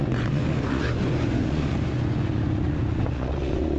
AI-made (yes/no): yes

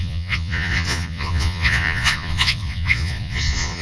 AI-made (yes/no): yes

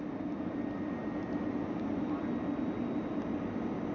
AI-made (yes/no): no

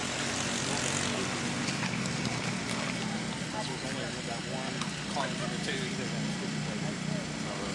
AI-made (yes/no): no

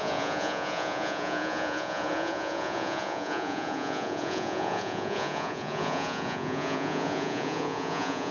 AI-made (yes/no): yes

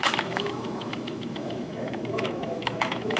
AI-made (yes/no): yes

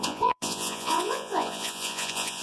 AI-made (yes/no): yes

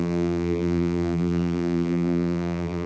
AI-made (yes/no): yes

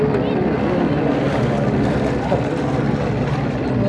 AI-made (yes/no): no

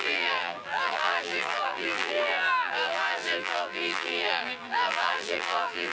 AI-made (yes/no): yes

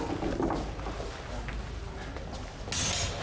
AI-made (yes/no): no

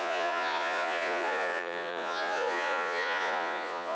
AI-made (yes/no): yes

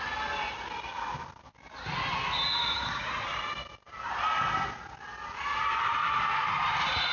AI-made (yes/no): no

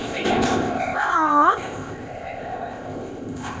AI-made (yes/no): yes